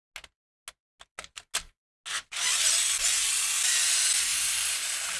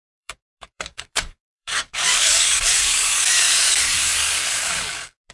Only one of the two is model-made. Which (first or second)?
second